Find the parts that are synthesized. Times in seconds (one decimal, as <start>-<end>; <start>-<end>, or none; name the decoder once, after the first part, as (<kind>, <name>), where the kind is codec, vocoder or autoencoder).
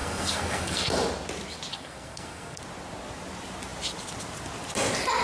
0.0-0.9 (codec, SNAC); 1.7-2.6